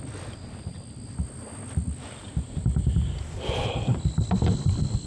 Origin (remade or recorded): recorded